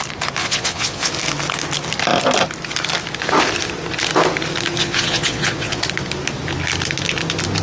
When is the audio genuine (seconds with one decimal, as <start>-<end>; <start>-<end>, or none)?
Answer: 0.0-0.4; 1.1-4.8; 5.8-7.6